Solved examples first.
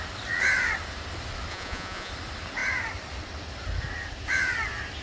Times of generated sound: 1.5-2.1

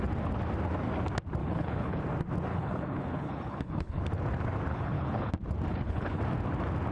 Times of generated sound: 1.4-2.0; 2.5-4.0; 4.7-5.3; 5.7-6.2